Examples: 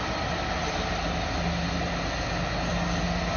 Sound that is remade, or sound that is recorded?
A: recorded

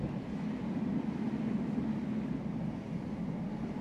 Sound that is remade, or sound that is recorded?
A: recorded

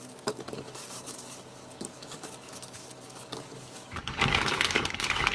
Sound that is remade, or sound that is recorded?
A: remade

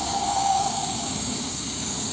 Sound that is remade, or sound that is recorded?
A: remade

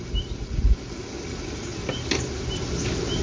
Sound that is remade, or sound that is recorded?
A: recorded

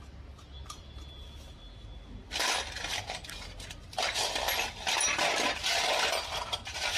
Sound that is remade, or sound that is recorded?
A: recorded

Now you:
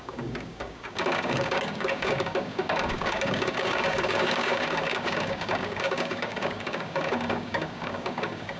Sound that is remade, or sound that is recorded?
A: remade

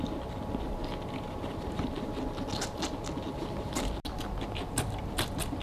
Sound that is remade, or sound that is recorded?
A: recorded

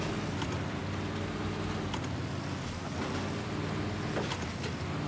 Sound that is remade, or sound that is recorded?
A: recorded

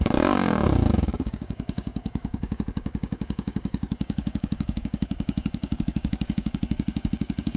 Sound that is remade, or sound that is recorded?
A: remade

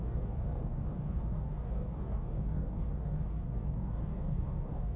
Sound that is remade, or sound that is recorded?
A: remade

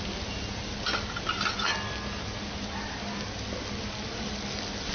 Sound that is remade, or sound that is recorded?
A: recorded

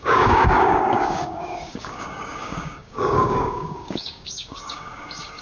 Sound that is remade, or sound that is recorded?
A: remade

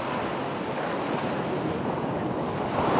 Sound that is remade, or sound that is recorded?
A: recorded